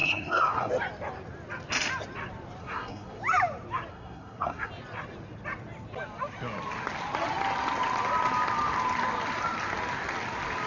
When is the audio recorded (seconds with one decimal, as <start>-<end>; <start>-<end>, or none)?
0.7-2.6; 3.2-3.9; 4.7-10.7